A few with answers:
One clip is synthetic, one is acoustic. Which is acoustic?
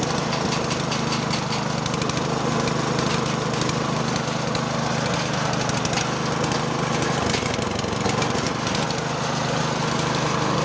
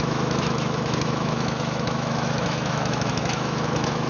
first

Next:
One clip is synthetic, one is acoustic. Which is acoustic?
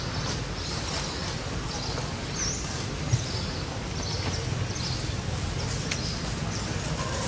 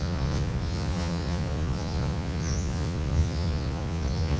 first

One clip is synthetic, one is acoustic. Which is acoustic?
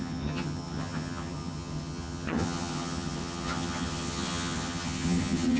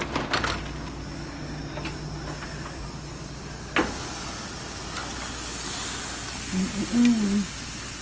second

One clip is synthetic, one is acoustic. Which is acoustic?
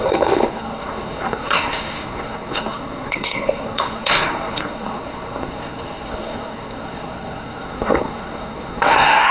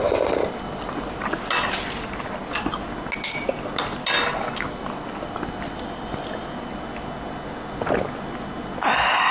second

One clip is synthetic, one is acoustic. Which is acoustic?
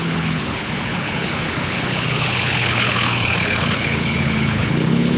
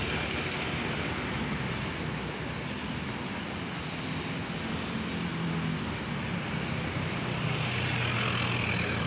second